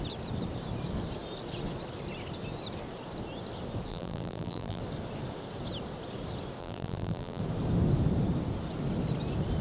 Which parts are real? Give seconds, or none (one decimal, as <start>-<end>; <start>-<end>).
0.0-3.9; 4.8-6.6; 7.4-9.6